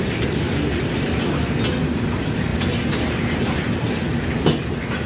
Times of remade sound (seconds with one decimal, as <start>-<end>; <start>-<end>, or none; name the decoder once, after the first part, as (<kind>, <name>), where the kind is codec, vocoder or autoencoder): none